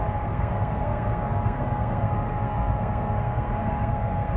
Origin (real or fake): fake